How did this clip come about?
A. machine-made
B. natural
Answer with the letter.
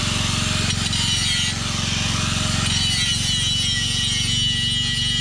B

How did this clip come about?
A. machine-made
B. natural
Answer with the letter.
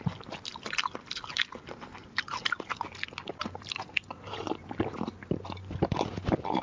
B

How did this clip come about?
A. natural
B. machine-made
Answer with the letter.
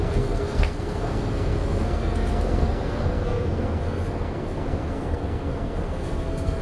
B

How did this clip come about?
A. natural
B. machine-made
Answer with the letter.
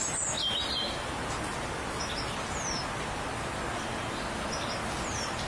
A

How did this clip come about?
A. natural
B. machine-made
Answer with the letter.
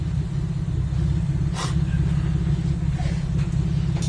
A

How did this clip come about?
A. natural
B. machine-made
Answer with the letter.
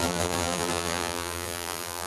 B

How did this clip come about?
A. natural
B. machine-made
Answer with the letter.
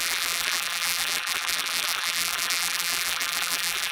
B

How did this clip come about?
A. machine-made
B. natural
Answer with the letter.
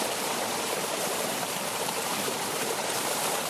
A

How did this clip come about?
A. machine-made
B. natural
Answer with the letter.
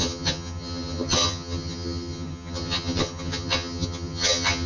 A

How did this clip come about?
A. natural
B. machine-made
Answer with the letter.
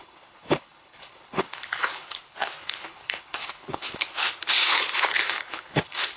B